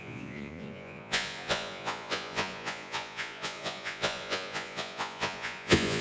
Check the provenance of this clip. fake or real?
fake